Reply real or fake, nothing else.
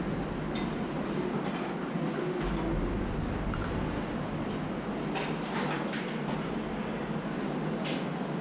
real